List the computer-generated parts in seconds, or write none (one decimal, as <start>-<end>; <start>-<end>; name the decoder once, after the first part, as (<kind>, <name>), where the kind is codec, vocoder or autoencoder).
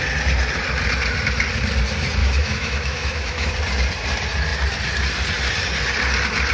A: 2.2-3.5 (autoencoder, DAC-VAE)